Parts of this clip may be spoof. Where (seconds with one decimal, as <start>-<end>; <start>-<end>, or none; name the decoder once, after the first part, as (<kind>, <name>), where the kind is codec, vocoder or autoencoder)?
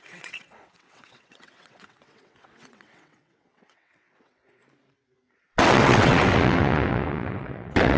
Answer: 0.0-4.6 (vocoder, WaveNeXt); 5.6-8.0